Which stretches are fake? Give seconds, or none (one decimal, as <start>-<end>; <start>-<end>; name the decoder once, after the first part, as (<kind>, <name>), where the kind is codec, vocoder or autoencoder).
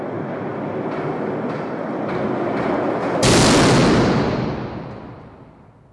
0.5-2.7 (vocoder, BigVGAN v2); 3.8-4.9